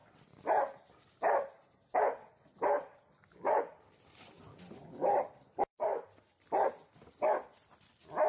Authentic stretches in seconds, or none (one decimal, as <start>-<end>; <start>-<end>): 5.9-6.4